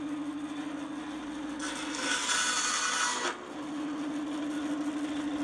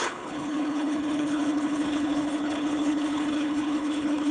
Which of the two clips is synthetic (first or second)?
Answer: second